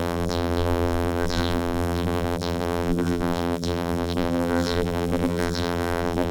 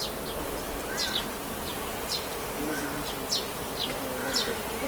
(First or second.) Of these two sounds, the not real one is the first